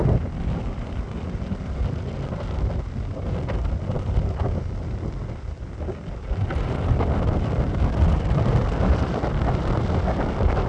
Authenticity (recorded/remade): recorded